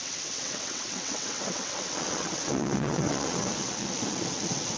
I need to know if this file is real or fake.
fake